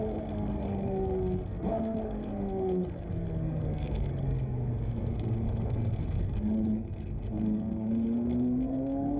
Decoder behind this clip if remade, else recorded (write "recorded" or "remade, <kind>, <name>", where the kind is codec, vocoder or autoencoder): remade, codec, SNAC